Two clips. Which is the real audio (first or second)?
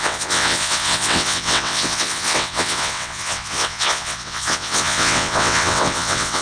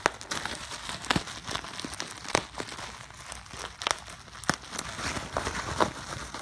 second